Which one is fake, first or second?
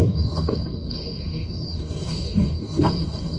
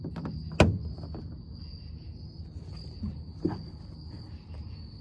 first